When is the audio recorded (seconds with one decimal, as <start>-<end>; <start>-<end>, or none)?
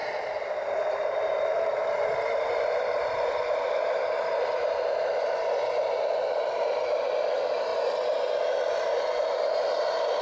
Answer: 0.0-0.6; 7.7-8.8